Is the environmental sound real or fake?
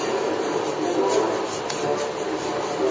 real